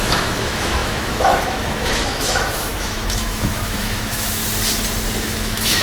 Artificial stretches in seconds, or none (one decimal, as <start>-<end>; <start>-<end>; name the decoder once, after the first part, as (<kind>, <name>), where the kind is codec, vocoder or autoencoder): 0.0-4.4 (autoencoder, DAC-VAE); 5.2-5.8